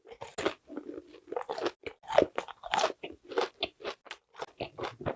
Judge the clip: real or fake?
real